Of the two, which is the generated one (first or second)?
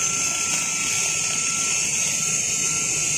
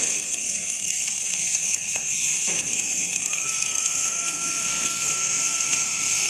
second